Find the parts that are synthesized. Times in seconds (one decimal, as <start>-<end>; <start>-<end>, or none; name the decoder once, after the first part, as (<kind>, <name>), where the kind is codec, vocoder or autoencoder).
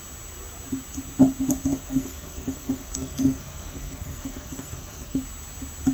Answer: 1.7-5.2 (codec, SNAC)